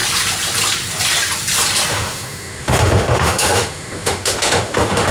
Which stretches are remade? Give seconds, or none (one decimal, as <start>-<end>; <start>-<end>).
1.9-5.1